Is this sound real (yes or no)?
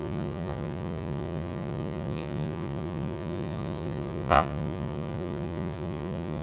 no